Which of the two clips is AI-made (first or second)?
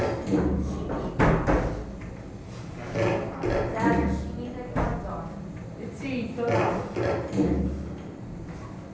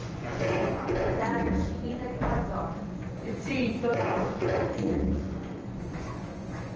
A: second